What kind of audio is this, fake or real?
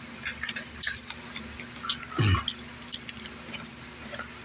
real